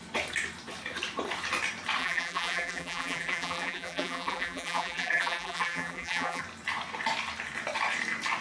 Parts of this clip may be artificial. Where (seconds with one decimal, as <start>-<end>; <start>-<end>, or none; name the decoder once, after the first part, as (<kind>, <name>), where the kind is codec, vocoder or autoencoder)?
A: 2.0-6.4 (vocoder, BigVGAN v2)